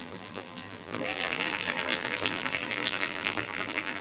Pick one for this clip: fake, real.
fake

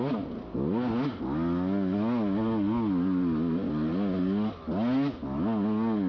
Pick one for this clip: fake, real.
real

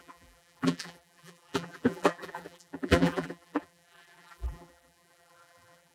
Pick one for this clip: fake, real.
fake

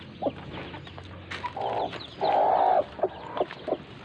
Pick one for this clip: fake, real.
real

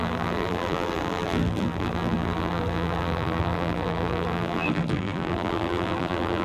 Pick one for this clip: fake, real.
fake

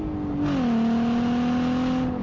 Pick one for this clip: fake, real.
real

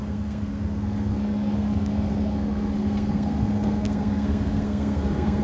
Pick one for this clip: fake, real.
fake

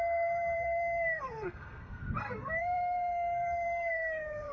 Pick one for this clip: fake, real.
fake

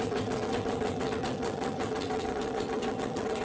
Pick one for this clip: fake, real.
fake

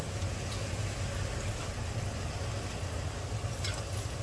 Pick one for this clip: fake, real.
real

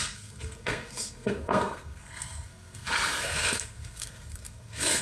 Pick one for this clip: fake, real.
fake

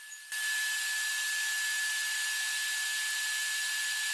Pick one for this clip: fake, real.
real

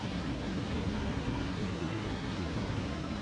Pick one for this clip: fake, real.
fake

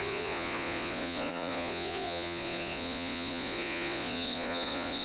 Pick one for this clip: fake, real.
fake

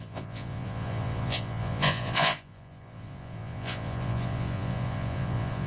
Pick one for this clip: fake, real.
fake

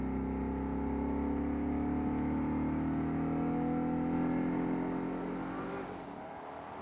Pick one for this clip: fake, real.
real